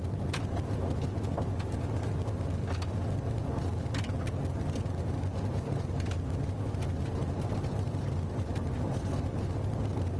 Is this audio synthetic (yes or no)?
no